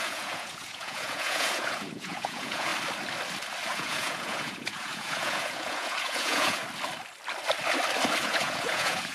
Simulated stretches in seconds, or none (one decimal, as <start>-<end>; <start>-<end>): 0.0-2.7; 3.7-6.6; 8.2-9.1